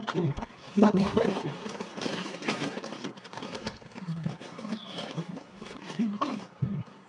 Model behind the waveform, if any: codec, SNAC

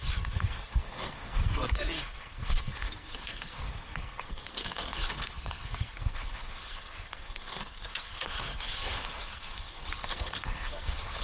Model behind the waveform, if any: codec, SNAC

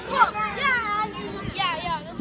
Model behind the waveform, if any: none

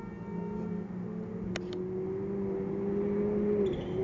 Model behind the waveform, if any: none